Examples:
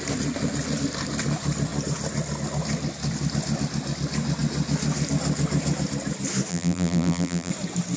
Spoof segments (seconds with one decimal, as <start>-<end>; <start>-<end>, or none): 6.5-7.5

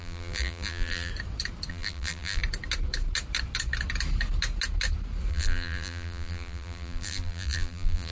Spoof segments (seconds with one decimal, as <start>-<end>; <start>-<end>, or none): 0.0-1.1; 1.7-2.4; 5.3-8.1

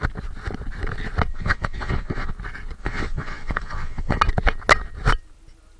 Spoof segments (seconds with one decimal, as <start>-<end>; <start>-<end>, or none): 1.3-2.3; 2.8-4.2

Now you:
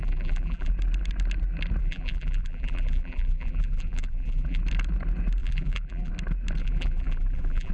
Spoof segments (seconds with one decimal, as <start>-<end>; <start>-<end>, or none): 0.0-0.7; 1.8-4.6; 5.4-6.1; 6.6-7.7

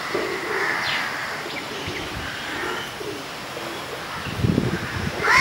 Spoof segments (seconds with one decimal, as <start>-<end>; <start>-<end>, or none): 1.2-2.3

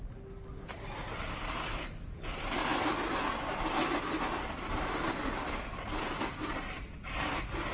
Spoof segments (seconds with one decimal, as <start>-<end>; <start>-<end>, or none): none

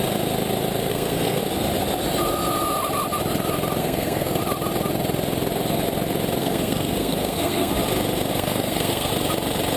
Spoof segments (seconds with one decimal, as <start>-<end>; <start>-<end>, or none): 0.9-1.4; 3.8-4.4; 6.4-7.7; 8.3-9.1